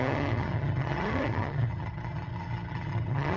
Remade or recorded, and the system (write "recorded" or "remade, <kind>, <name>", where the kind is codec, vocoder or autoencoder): remade, vocoder, HiFi-GAN